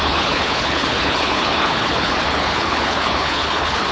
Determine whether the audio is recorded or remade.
remade